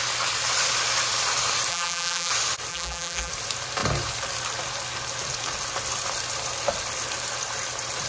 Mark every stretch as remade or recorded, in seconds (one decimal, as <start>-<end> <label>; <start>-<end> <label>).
0.0-1.7 recorded; 1.7-2.3 remade; 2.3-2.7 recorded; 2.7-3.3 remade; 3.3-8.1 recorded